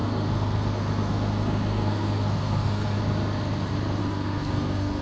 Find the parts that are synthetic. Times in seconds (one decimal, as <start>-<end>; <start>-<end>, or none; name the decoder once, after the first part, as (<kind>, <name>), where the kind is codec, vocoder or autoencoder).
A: 0.0-3.0 (codec, SNAC); 4.0-5.0